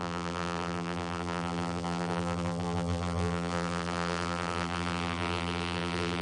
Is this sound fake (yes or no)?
yes